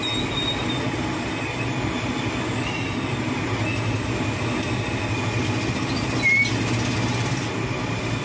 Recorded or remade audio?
recorded